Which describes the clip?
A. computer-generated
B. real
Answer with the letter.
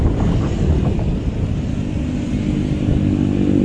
B